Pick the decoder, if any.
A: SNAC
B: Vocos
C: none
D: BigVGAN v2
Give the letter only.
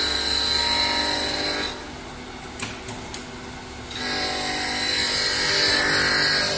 C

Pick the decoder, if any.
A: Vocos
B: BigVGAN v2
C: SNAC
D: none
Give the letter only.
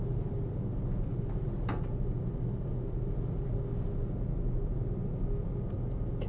D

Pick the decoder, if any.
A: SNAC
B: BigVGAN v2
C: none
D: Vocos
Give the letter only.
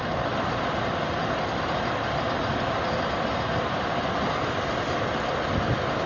C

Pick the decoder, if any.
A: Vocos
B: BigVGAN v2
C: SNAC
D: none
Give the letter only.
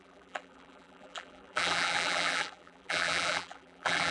B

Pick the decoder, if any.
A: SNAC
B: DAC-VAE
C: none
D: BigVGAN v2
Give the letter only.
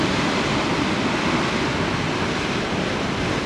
D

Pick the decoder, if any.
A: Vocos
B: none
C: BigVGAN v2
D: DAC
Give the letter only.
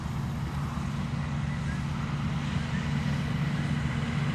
B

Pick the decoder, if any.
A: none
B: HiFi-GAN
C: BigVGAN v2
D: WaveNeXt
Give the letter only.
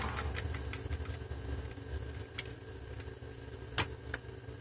A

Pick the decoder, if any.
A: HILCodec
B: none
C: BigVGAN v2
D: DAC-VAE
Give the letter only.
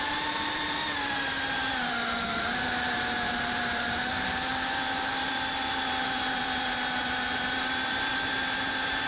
C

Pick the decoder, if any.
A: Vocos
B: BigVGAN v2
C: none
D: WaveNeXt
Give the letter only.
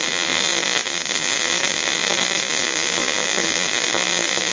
C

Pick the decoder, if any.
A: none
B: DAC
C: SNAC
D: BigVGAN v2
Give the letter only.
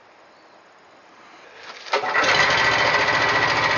A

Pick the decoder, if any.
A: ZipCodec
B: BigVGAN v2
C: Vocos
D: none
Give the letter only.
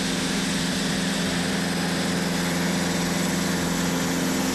D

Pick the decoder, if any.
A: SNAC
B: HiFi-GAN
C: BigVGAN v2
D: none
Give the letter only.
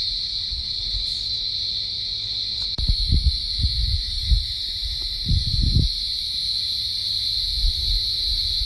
C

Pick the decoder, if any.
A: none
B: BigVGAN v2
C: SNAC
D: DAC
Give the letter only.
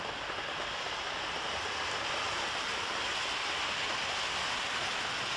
B